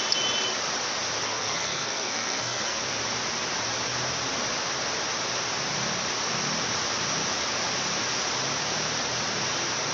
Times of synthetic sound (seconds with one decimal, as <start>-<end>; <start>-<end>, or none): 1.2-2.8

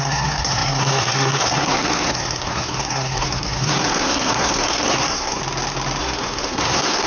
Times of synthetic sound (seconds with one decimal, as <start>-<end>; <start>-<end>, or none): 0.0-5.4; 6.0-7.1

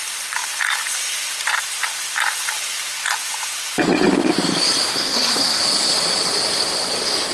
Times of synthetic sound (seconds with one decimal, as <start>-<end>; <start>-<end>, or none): 4.9-5.6